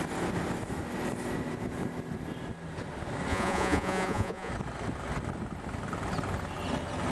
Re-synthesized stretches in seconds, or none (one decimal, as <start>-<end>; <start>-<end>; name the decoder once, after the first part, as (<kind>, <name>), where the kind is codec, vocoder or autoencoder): 3.3-4.5 (vocoder, Vocos)